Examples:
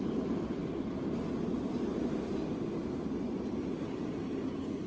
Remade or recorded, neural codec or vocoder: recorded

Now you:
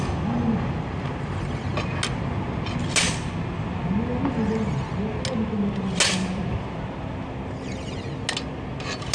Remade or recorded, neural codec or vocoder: recorded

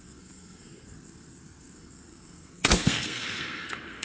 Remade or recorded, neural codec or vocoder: remade, codec, SNAC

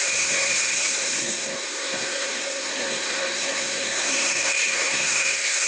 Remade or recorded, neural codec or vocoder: remade, codec, SNAC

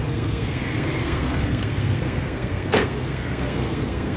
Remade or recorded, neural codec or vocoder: remade, codec, SNAC